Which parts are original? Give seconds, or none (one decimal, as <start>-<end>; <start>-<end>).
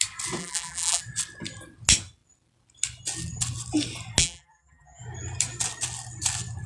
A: 0.0-0.4; 1.0-4.2; 5.0-6.7